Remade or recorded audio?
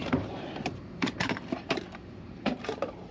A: remade